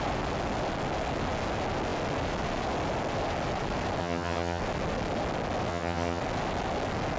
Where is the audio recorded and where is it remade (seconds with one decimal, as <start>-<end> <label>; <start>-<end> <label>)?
0.0-4.0 recorded; 4.0-4.6 remade; 4.6-5.7 recorded; 5.7-6.2 remade; 6.2-7.2 recorded